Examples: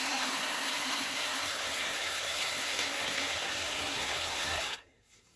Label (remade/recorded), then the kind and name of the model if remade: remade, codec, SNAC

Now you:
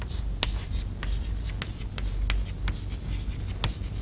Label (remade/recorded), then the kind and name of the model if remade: recorded